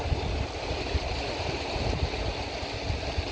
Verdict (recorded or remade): recorded